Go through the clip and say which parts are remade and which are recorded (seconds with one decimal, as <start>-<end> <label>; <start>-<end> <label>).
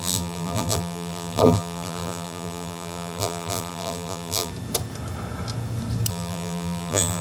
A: 0.0-4.5 remade; 4.5-6.1 recorded; 6.1-7.2 remade